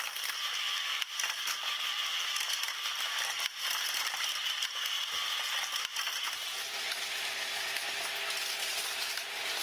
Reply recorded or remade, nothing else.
remade